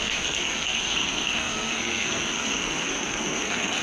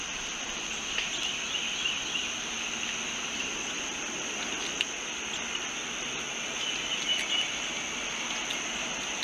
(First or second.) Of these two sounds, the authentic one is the second